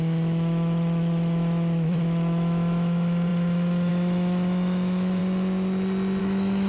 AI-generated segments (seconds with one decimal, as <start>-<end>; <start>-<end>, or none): 0.0-5.2; 6.2-6.7